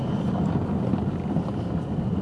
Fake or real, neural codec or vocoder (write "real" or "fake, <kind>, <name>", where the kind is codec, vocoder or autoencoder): real